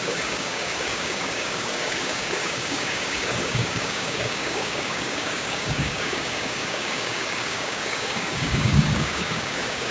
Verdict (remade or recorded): remade